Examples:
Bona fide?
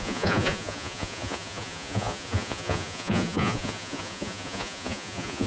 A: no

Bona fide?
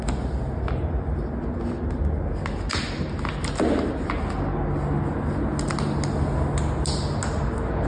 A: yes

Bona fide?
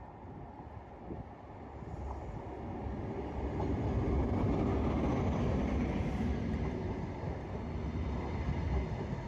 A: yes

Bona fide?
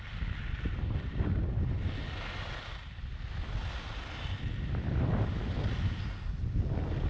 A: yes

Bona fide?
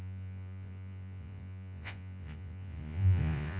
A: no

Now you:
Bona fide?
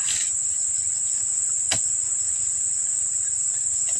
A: yes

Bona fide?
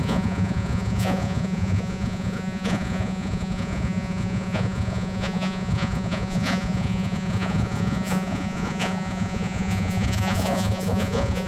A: no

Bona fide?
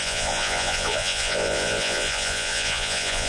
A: no